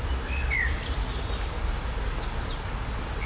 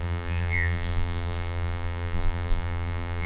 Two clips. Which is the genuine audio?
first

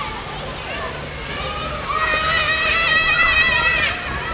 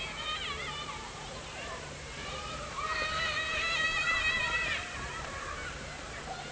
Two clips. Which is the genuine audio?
first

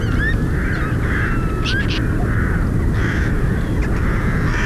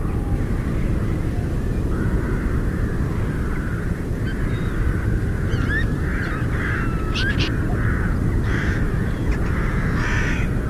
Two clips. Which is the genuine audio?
first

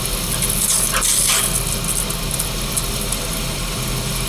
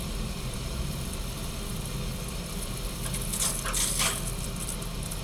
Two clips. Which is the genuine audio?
first